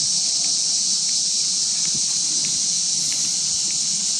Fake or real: real